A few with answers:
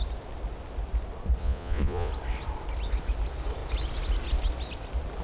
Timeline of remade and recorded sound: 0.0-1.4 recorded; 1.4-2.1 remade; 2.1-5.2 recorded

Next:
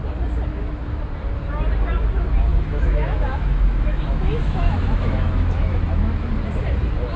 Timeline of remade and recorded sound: 0.0-0.5 recorded; 0.5-1.1 remade; 1.1-2.5 recorded; 2.5-6.3 remade; 6.3-7.2 recorded

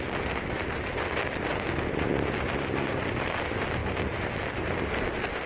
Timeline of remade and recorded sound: 0.0-5.5 recorded

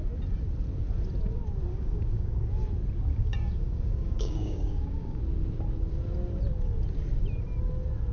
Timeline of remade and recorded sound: 0.0-1.7 recorded; 1.7-2.5 remade; 2.5-3.1 recorded; 3.1-5.2 remade; 5.2-8.1 recorded